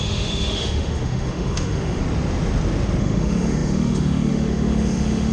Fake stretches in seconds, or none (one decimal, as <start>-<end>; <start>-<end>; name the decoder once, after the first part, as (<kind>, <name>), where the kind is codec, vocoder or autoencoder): 0.0-2.0 (autoencoder, DAC-VAE); 3.0-5.3